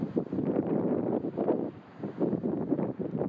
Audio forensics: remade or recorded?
recorded